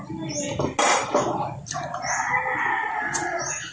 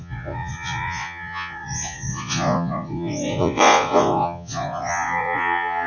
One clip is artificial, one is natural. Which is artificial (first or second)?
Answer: second